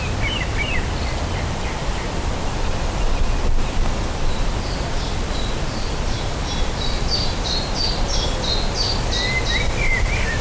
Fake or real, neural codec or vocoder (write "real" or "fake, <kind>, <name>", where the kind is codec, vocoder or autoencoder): real